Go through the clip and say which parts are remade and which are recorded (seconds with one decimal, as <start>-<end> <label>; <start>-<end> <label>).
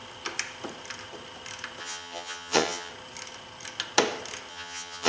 0.0-1.8 recorded; 1.8-2.9 remade; 2.9-4.5 recorded; 4.5-5.1 remade